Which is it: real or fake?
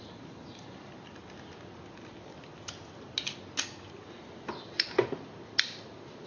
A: real